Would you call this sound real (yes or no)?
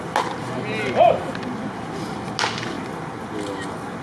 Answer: yes